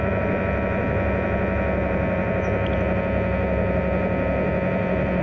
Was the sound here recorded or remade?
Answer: recorded